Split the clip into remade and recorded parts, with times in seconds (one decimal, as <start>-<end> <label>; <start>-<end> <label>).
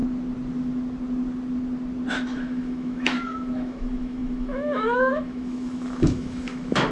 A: 0.0-2.1 recorded; 2.1-6.9 remade